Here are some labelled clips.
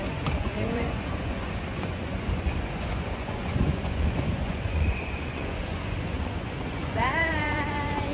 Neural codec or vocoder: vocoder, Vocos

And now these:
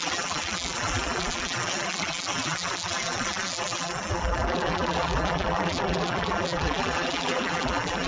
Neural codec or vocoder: vocoder, BigVGAN v2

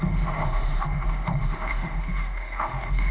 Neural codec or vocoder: autoencoder, DAC-VAE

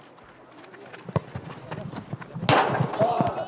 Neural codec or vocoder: none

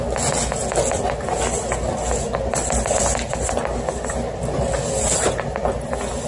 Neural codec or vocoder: none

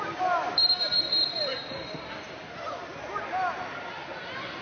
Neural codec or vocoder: none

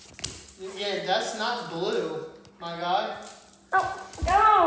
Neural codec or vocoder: none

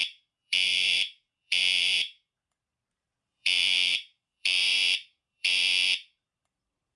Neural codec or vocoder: vocoder, BigVGAN v2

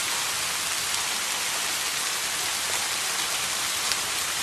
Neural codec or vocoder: none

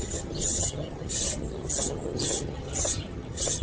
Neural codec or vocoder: vocoder, HiFi-GAN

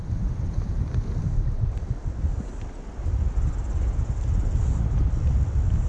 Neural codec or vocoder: none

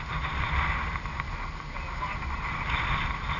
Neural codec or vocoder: none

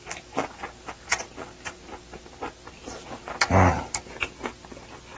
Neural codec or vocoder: none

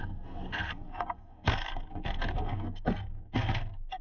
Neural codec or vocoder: codec, SNAC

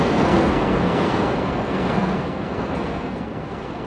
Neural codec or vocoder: codec, SNAC